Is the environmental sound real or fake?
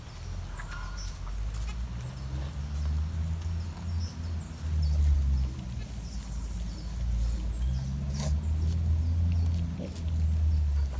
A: real